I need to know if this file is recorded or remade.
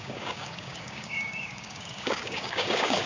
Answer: remade